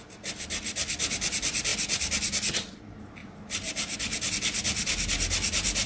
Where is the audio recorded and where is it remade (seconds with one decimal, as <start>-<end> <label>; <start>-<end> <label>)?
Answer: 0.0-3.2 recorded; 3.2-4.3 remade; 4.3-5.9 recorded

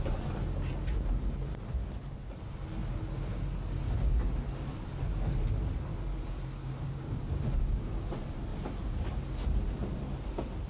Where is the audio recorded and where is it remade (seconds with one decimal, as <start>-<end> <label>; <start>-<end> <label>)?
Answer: 0.0-6.6 recorded; 6.6-8.1 remade; 8.1-10.7 recorded

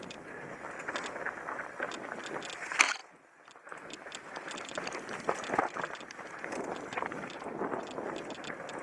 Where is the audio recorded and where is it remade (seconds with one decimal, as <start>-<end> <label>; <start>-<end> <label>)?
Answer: 0.0-3.0 recorded; 3.0-6.6 remade; 6.6-8.8 recorded

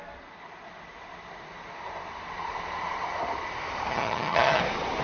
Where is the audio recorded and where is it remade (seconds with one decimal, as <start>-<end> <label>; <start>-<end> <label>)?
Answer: 0.0-3.9 recorded; 3.9-4.6 remade; 4.6-5.0 recorded

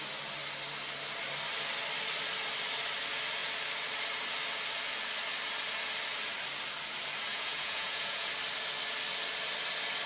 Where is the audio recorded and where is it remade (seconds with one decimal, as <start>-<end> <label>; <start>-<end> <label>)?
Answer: 0.0-7.3 recorded; 7.3-8.3 remade; 8.3-10.1 recorded